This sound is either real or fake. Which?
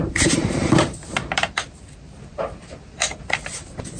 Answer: fake